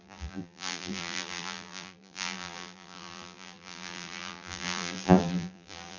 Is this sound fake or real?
fake